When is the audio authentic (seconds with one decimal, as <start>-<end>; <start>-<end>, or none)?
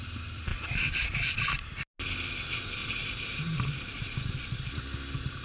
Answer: 0.0-2.8; 4.4-5.4